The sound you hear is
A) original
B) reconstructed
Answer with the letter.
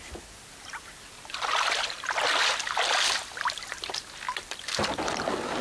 A